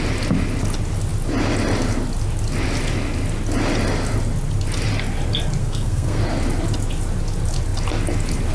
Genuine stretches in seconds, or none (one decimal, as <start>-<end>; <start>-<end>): 0.0-5.6; 6.2-8.5